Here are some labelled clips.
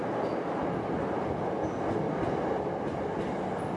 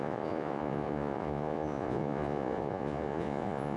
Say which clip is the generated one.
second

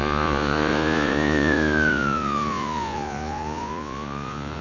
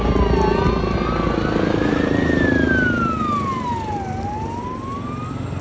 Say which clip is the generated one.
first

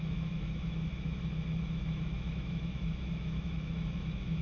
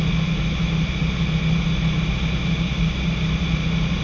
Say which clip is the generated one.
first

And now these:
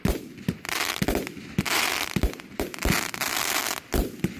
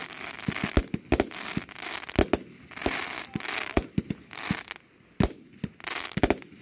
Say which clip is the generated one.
first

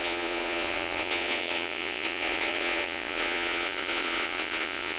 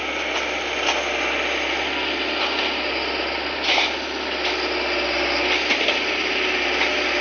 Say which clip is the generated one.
first